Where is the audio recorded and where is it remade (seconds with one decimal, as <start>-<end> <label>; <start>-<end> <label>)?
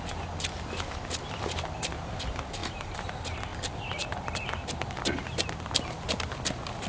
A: 0.0-2.6 recorded; 2.6-3.1 remade; 3.1-6.9 recorded